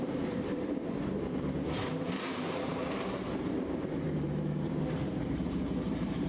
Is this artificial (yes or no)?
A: yes